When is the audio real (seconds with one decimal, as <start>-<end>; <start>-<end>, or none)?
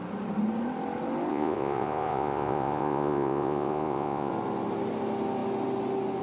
0.0-1.3; 4.3-6.2